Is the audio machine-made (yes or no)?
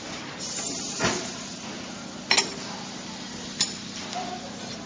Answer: no